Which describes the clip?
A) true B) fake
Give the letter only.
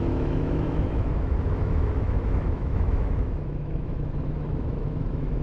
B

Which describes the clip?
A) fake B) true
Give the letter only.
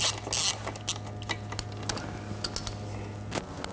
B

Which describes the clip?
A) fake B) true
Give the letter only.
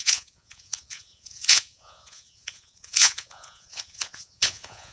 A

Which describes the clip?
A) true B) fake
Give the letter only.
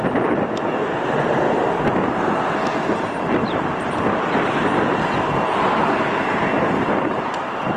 A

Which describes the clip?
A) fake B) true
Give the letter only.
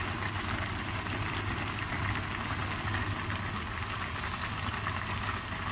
B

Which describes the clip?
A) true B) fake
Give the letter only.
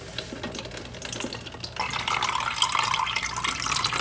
A